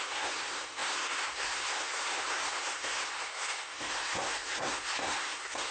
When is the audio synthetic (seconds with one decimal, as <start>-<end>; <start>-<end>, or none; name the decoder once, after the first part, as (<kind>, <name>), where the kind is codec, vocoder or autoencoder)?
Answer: 0.0-5.7 (codec, SNAC)

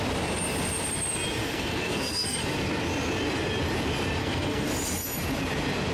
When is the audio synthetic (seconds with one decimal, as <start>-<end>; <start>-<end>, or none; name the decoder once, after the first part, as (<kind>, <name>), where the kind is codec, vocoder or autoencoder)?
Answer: 1.4-2.4 (codec, SNAC); 4.2-4.7

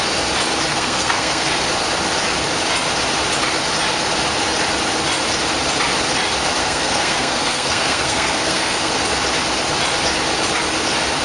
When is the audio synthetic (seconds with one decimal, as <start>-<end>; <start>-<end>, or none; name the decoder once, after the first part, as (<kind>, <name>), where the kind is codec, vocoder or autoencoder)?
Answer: 0.7-1.5 (codec, SNAC); 6.6-8.9

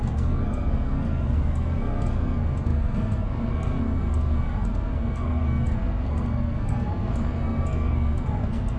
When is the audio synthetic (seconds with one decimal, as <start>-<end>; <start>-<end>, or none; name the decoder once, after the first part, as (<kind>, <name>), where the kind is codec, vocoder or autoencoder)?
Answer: 0.0-8.8 (codec, SNAC)

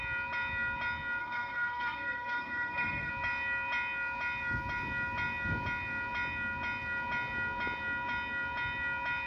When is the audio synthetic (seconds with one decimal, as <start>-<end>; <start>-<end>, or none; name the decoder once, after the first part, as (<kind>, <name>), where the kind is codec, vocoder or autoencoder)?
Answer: 1.2-3.1 (codec, SNAC)

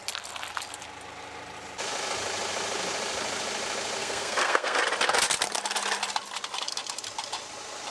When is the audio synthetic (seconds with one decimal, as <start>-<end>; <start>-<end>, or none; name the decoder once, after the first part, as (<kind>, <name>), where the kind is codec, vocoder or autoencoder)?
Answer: 4.0-4.8 (codec, SNAC)

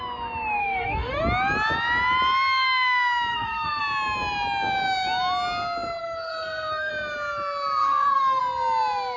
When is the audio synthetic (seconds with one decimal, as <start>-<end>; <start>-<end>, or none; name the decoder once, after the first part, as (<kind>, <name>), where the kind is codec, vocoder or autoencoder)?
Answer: 0.6-1.2 (codec, SNAC); 3.3-3.8; 6.0-6.9; 7.8-8.4

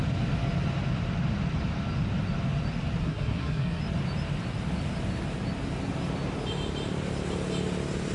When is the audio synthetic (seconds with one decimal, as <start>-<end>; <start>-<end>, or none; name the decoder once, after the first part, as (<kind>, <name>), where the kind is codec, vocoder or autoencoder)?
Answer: 3.0-3.8 (codec, SNAC)